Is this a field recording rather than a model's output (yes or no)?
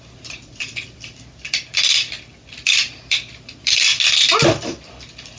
yes